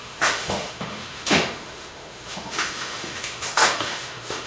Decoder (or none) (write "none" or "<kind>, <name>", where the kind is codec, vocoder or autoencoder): autoencoder, DAC-VAE